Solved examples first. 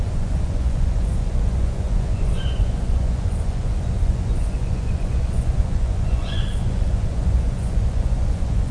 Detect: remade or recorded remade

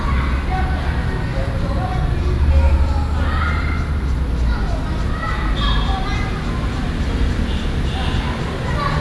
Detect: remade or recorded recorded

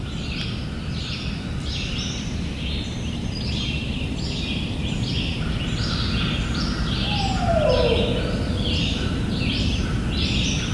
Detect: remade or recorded recorded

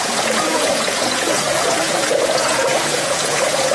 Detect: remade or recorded remade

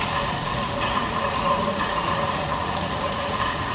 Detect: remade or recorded remade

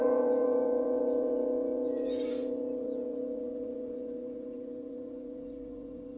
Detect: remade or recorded remade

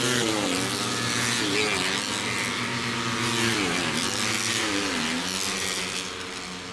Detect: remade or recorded recorded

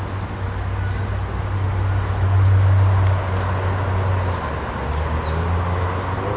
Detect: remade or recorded recorded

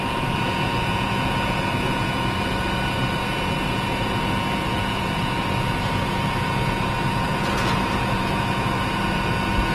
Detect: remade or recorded remade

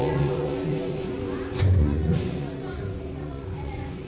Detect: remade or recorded remade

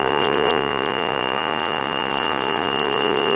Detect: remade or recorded remade